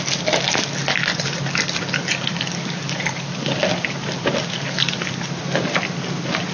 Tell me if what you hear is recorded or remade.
recorded